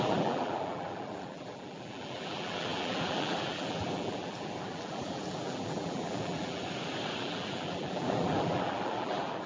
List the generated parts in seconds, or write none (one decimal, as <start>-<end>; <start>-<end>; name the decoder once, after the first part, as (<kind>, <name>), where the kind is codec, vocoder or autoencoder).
0.0-6.6 (vocoder, BigVGAN v2); 7.2-9.5